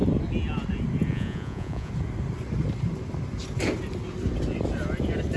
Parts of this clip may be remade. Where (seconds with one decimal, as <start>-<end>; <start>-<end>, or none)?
1.1-1.9